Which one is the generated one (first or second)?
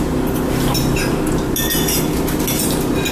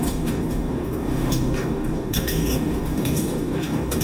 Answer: second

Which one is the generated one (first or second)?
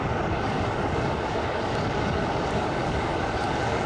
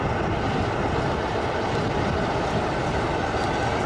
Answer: first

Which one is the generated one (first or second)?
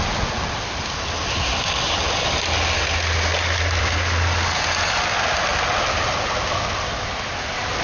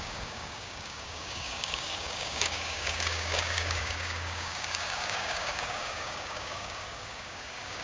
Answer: second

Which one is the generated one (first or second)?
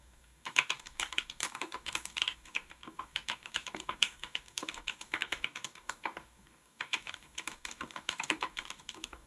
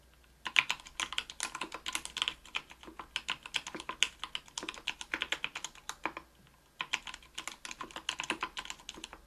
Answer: first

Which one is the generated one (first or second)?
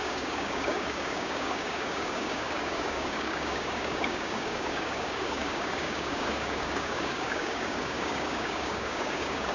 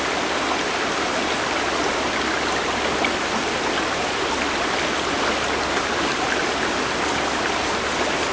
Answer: first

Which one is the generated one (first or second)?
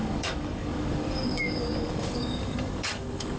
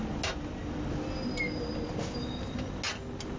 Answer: first